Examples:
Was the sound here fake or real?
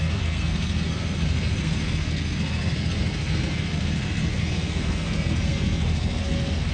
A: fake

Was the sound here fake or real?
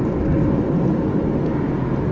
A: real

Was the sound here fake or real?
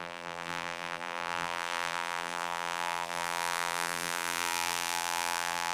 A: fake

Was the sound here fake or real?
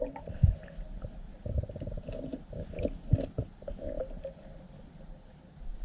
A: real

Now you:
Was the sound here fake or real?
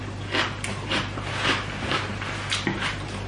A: fake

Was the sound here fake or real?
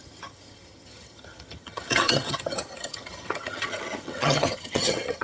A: fake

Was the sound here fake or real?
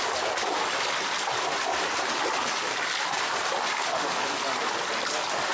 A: real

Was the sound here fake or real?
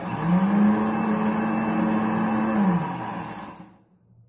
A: real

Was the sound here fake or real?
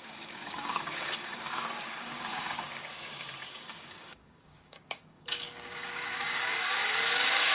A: fake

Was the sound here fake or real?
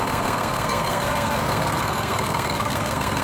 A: fake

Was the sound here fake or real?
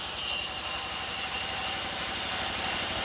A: real